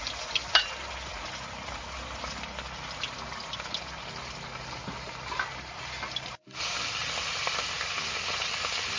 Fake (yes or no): no